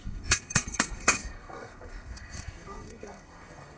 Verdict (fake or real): fake